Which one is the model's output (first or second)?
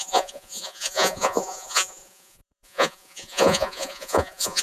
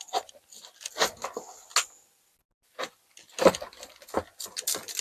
first